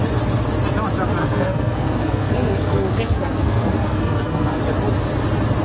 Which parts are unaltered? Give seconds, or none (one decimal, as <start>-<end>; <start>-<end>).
0.0-1.2; 4.6-5.6